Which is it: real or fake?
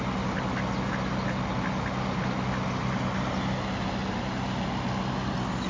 real